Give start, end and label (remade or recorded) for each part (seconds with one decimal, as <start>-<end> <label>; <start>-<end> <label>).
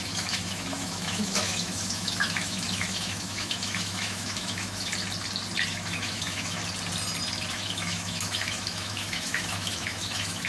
0.0-4.9 remade; 4.9-5.7 recorded; 5.7-6.6 remade; 6.6-7.5 recorded; 7.5-10.5 remade